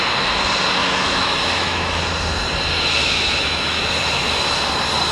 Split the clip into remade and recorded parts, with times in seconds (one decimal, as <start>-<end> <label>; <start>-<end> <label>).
0.0-0.8 recorded; 0.8-2.0 remade; 2.0-3.0 recorded; 3.0-3.8 remade; 3.8-5.1 recorded